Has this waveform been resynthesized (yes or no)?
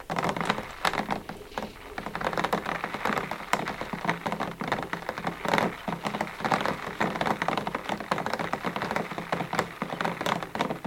no